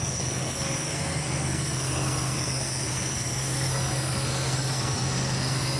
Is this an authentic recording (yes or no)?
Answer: no